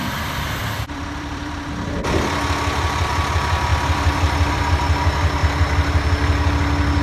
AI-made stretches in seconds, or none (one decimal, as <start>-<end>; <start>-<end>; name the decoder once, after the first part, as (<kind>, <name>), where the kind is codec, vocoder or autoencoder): 0.0-1.7 (vocoder, BigVGAN v2); 3.7-4.6